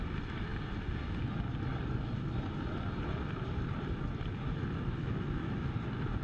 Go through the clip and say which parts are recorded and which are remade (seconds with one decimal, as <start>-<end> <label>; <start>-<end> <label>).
0.0-5.0 recorded; 5.0-5.7 remade; 5.7-6.2 recorded